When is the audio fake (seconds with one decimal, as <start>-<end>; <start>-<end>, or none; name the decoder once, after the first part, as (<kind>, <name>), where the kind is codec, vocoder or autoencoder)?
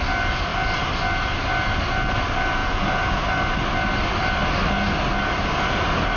2.6-3.2 (vocoder, Vocos)